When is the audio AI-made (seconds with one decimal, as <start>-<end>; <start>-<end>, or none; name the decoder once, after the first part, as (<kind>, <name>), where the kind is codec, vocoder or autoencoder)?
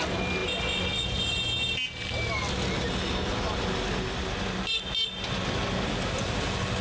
none